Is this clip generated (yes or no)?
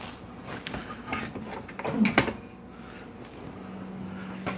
no